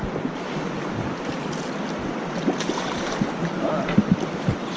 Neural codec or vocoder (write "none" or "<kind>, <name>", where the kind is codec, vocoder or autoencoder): none